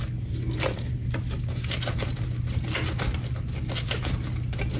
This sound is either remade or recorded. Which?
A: recorded